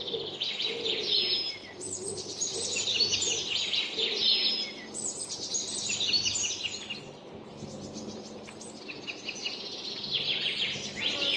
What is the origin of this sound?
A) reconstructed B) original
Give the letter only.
B